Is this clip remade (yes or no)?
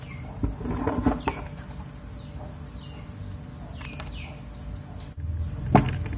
no